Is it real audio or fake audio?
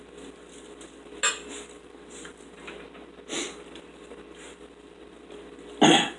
real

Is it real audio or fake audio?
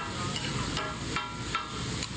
real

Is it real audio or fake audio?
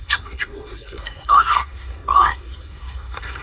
fake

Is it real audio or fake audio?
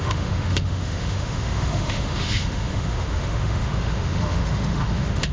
fake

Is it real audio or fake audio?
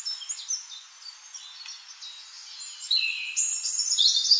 real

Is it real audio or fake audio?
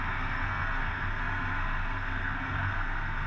fake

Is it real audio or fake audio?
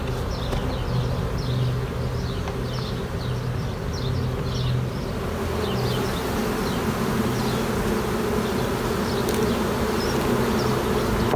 real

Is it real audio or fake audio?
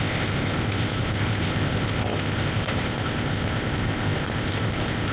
fake